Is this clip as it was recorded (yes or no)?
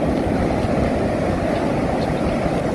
yes